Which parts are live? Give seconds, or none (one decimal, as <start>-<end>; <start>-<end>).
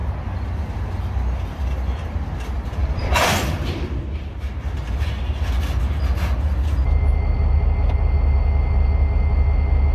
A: 0.0-2.8; 4.5-9.9